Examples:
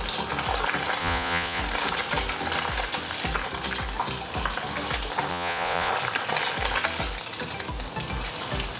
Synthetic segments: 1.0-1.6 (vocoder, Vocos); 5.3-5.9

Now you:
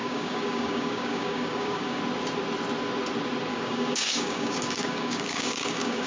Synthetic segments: 0.0-2.0 (codec, DAC); 3.5-6.1

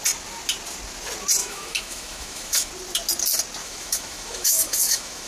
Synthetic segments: 1.4-2.7 (autoencoder, DAC-VAE); 3.6-5.3

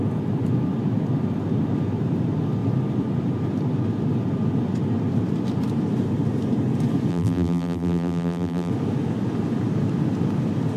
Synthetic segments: 7.1-8.7 (vocoder, BigVGAN v2)

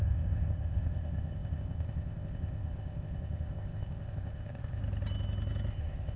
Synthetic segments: 0.0-4.8 (codec, ZipCodec); 5.7-6.2

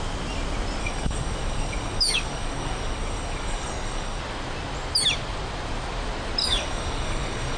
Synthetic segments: 0.8-4.2 (codec, DAC); 6.4-7.6

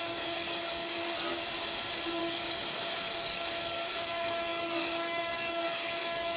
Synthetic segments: 0.0-1.3 (codec, DAC); 2.2-6.4